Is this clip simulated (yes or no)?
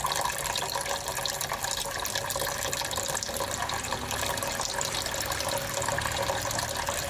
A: no